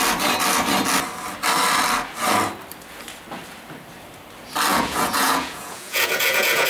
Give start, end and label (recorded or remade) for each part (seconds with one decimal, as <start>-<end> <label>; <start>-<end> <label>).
0.0-4.7 recorded; 4.7-6.7 remade